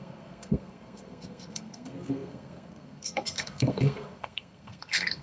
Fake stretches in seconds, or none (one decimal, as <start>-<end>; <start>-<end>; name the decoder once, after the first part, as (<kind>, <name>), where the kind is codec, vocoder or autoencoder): 0.0-5.2 (codec, SNAC)